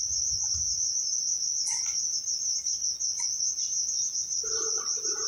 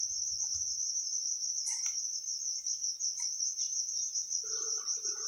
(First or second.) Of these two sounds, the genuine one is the first